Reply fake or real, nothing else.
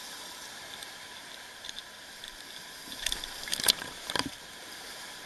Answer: fake